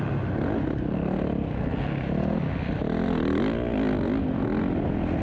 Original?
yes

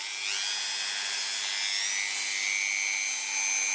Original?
yes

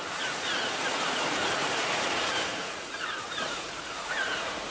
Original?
no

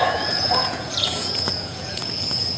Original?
no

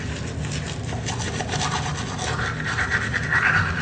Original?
yes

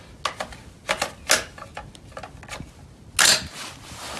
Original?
yes